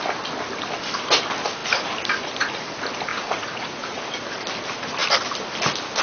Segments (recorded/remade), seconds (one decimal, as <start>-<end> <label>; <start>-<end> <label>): 0.0-3.1 recorded; 3.1-4.1 remade; 4.1-6.0 recorded